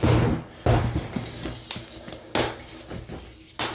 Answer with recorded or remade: recorded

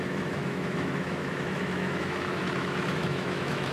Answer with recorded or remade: remade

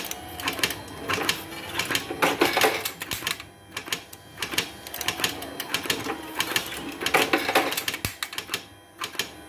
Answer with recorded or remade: recorded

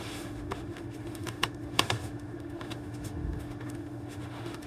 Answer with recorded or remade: remade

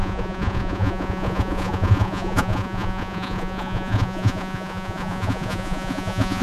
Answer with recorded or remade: remade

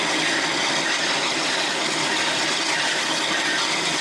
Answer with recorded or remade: recorded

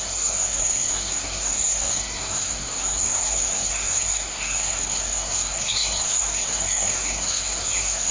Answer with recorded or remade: remade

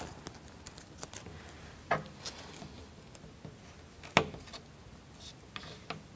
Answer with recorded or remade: recorded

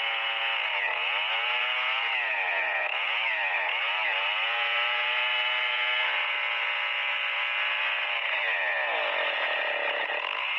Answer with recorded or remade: remade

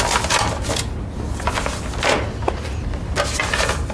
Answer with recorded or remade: recorded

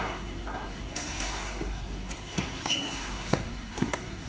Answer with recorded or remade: remade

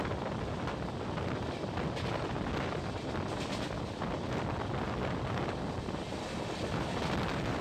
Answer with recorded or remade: recorded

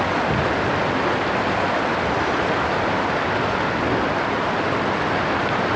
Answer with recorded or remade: recorded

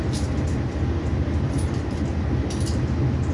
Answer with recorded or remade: recorded